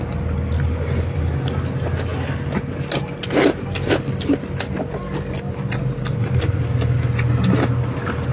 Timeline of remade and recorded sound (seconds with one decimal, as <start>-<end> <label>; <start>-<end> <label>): 0.0-8.3 recorded